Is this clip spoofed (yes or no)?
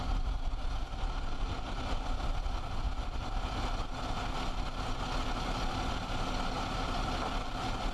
no